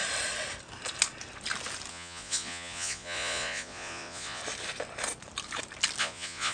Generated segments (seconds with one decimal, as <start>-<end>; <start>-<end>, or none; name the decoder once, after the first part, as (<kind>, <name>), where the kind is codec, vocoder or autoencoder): 1.9-4.4 (vocoder, Vocos); 6.0-6.5